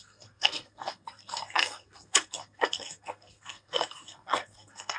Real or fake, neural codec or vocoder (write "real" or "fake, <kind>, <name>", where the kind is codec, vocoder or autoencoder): fake, codec, SNAC